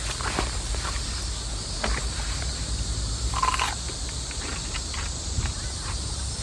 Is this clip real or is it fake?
real